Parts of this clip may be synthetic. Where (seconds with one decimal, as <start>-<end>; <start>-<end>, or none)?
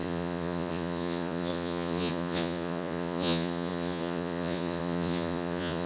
0.0-5.9